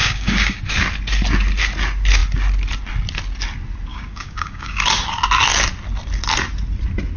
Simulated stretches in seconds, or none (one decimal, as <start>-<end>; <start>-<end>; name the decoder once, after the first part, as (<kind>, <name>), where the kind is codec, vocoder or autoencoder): 0.0-0.6 (codec, DAC); 3.9-4.8